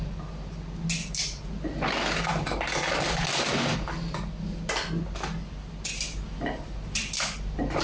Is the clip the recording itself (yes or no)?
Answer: yes